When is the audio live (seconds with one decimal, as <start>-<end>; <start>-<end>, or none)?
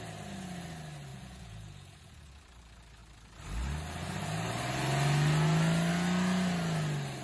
0.0-1.1; 2.4-7.2